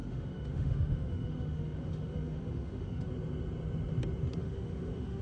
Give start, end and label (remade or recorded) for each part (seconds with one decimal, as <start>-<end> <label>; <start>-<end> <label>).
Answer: 0.0-3.1 remade; 3.1-4.4 recorded; 4.4-5.2 remade